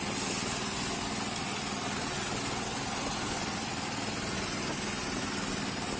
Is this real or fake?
real